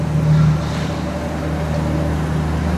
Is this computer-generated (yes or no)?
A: no